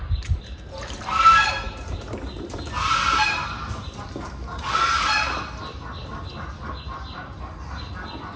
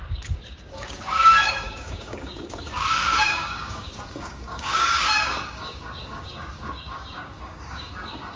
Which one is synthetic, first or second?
second